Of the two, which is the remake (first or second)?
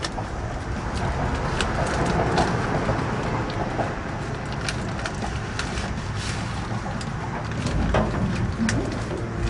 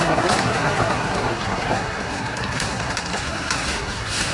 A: second